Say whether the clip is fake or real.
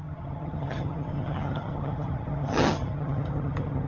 fake